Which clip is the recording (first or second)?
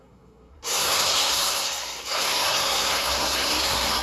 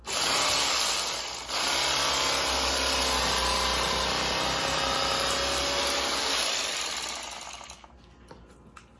second